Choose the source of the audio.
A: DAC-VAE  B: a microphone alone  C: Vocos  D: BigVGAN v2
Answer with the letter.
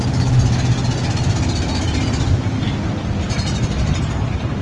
B